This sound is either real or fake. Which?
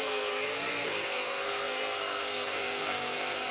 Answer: fake